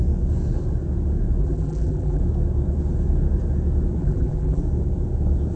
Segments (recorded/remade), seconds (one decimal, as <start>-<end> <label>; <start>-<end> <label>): 0.0-1.4 recorded; 1.4-2.2 remade; 2.2-4.0 recorded; 4.0-4.6 remade; 4.6-5.6 recorded